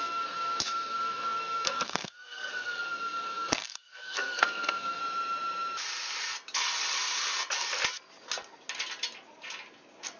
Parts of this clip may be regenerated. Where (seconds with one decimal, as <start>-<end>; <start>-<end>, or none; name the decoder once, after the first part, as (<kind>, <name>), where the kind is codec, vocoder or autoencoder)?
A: 0.0-5.0 (codec, SNAC)